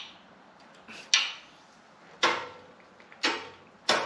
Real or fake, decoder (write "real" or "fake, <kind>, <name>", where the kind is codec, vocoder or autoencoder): real